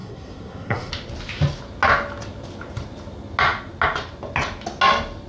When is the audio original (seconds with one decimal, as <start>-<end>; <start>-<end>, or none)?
0.9-5.3

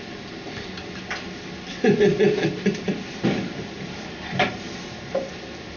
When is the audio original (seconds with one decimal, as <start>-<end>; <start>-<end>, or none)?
0.0-5.8